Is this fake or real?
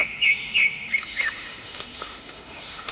fake